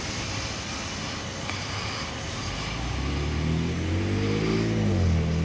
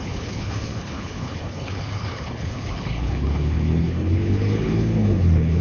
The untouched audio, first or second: first